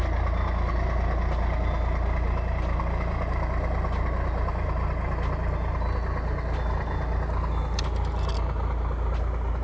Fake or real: real